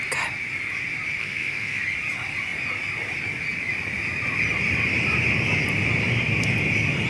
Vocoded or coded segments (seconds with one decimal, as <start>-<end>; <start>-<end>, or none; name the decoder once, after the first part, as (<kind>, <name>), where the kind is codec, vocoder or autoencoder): 1.2-1.8 (codec, SNAC)